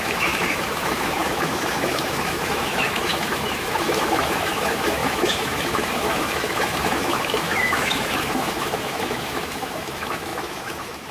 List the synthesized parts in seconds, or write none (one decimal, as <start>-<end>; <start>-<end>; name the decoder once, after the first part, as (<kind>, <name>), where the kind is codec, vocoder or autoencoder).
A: 0.0-11.1 (autoencoder, DAC-VAE)